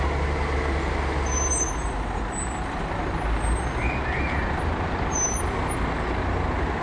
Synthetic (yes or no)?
no